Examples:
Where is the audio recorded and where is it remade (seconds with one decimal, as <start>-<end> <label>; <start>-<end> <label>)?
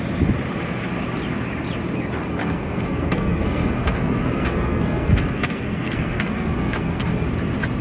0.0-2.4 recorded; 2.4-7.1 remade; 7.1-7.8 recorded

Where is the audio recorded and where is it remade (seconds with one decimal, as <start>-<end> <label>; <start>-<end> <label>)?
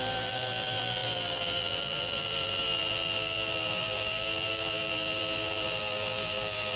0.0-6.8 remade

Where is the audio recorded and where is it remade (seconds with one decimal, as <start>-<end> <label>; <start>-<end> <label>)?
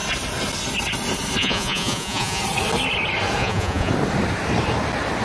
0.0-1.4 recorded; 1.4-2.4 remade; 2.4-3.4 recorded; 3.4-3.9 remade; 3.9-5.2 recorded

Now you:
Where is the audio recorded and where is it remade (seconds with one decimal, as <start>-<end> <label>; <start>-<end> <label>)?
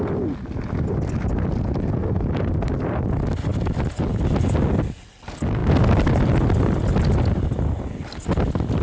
0.0-2.0 recorded; 2.0-2.7 remade; 2.7-8.8 recorded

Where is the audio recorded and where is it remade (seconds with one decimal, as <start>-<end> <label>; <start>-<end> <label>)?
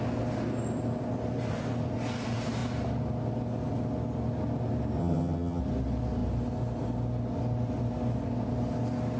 0.0-5.0 recorded; 5.0-5.6 remade; 5.6-9.2 recorded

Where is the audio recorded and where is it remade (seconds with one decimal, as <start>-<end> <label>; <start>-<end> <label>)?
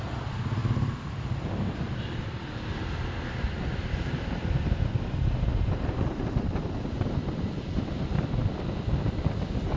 0.0-9.8 recorded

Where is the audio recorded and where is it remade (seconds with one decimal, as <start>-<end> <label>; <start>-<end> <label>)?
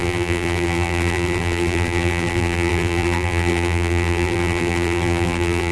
0.0-5.7 remade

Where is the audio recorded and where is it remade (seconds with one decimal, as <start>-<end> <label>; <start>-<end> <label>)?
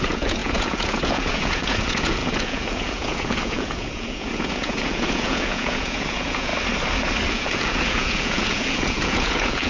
0.0-6.5 remade; 6.5-7.3 recorded; 7.3-9.7 remade